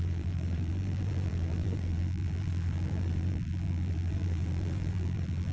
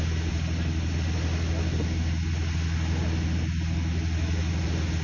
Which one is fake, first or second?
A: first